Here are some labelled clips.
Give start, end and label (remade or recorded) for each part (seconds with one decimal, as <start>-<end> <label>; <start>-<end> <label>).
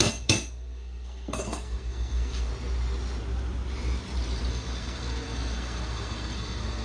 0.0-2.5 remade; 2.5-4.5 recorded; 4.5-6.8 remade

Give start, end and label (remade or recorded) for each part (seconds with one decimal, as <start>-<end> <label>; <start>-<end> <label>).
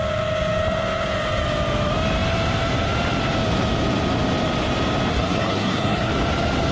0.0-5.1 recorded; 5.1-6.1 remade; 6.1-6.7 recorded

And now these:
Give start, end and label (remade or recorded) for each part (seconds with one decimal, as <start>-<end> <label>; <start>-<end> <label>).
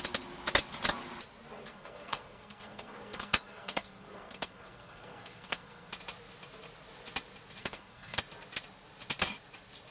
0.0-1.7 recorded; 1.7-5.9 remade; 5.9-7.6 recorded; 7.6-8.2 remade; 8.2-9.9 recorded